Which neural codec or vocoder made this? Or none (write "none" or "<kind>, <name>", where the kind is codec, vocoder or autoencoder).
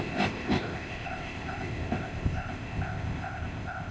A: codec, ZipCodec